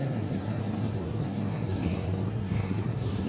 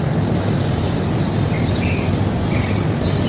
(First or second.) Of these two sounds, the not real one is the first